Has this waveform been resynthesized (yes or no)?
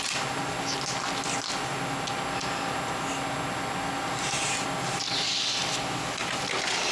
no